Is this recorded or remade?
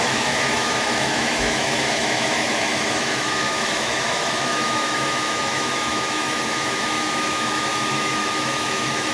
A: remade